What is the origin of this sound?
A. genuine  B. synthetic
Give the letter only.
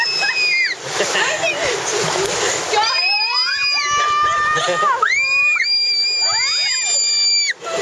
A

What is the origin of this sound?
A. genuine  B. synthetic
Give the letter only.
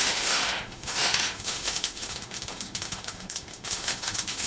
B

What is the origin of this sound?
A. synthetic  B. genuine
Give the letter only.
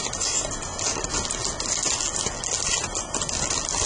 B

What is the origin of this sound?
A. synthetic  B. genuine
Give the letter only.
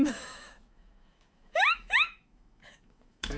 A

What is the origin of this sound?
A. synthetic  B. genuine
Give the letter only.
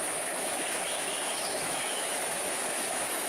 A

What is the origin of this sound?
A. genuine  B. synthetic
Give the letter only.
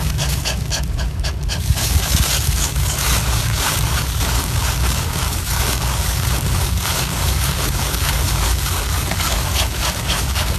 B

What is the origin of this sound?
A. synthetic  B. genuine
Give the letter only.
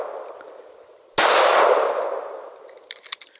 B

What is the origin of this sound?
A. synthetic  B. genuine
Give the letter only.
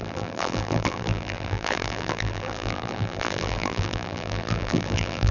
A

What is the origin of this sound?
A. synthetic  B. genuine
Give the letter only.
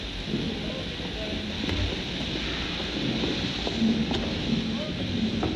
B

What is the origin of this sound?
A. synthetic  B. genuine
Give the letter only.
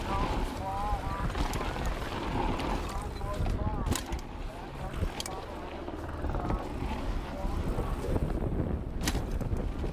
B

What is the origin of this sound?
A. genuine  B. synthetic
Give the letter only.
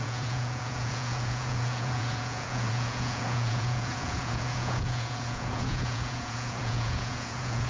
B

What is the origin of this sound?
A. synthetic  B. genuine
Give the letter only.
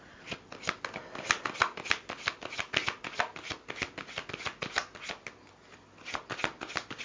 B